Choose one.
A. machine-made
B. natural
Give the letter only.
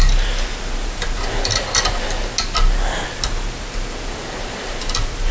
B